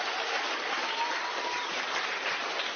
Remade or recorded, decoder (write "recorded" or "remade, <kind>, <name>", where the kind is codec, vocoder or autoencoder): recorded